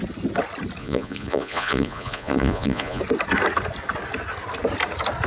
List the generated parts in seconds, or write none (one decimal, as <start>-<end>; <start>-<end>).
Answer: 0.8-3.0